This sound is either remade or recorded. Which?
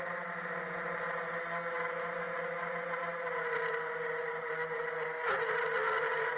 recorded